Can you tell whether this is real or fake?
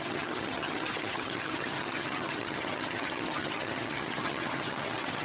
fake